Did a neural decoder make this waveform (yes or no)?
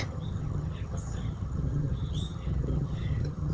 yes